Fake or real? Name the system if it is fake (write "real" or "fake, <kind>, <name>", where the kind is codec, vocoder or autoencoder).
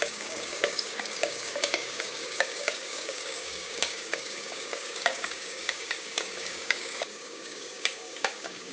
fake, codec, DAC